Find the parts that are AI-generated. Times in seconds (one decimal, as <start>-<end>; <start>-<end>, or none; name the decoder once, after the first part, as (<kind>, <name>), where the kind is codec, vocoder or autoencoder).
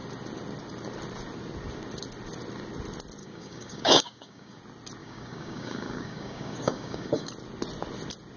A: 3.2-4.6 (codec, DAC); 5.0-7.3